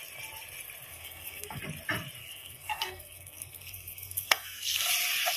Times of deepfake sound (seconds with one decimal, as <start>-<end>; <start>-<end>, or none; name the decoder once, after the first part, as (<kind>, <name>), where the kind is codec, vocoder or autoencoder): 0.9-1.6 (codec, SNAC); 2.2-4.9